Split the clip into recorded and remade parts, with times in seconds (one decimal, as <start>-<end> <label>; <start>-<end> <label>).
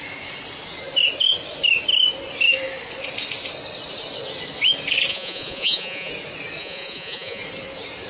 0.0-5.1 recorded; 5.1-6.1 remade; 6.1-6.6 recorded; 6.6-7.4 remade; 7.4-8.1 recorded